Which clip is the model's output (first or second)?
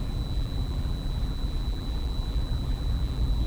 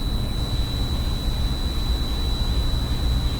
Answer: first